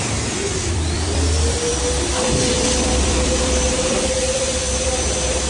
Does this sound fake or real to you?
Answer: fake